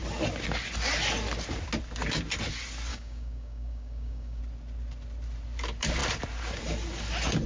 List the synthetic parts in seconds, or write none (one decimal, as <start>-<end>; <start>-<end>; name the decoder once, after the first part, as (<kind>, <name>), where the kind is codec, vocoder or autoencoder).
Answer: 2.9-4.4 (codec, DAC)